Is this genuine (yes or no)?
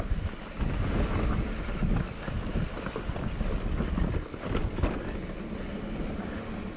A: yes